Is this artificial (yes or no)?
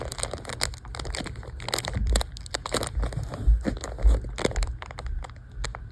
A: no